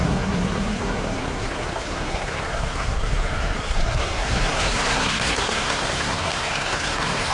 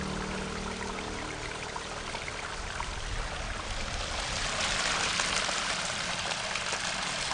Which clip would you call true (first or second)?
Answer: second